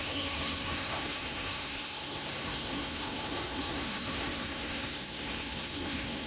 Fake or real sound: fake